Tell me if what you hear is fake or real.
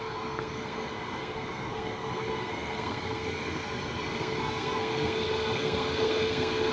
fake